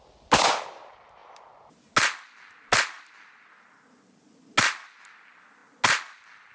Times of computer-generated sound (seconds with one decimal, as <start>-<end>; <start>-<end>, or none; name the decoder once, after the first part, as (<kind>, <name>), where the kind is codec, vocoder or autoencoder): none